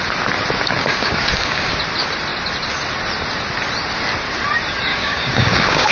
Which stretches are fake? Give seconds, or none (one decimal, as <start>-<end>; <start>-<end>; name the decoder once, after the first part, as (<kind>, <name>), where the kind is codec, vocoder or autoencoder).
0.8-1.7 (codec, DAC); 4.9-5.9